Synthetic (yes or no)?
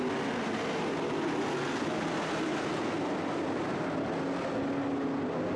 no